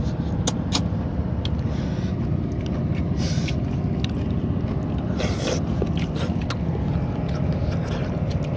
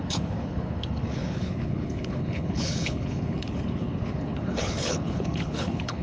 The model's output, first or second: second